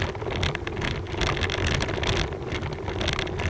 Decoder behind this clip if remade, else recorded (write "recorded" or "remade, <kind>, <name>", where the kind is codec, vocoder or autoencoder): recorded